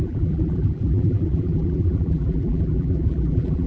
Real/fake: fake